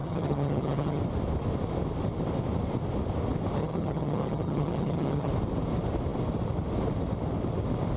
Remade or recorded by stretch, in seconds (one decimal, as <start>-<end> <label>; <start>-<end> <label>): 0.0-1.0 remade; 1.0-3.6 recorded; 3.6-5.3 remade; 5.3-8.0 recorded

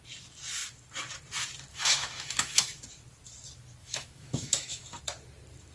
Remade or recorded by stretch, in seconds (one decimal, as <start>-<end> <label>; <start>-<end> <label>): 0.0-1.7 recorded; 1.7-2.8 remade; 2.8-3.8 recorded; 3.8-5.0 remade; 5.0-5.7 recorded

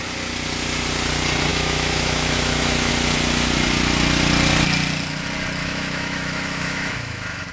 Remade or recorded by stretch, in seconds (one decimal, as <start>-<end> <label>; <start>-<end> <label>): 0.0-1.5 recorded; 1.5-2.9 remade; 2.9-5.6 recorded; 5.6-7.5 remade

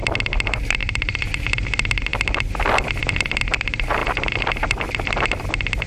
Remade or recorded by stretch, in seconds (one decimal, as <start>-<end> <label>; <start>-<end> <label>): 0.0-0.8 recorded; 0.8-1.4 remade; 1.4-5.9 recorded

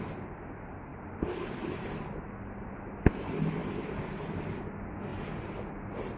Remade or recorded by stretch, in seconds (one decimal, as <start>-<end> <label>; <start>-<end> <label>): 0.0-0.9 recorded; 0.9-2.7 remade; 2.7-5.1 recorded; 5.1-5.8 remade; 5.8-6.2 recorded

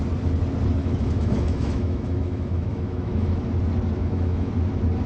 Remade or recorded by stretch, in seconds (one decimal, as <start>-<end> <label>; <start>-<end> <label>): 0.0-0.8 recorded; 0.8-3.4 remade; 3.4-4.0 recorded; 4.0-4.5 remade; 4.5-5.1 recorded

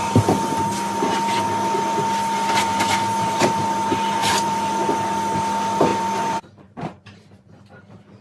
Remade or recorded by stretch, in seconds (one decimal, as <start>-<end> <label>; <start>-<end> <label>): 0.0-4.2 recorded; 4.2-4.7 remade; 4.7-5.9 recorded; 5.9-7.5 remade; 7.5-8.2 recorded

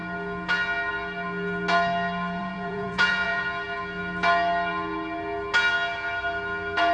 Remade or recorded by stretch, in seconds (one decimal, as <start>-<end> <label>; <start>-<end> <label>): 0.0-2.4 recorded; 2.4-3.4 remade; 3.4-6.9 recorded